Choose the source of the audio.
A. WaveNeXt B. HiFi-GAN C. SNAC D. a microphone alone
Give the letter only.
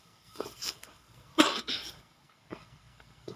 C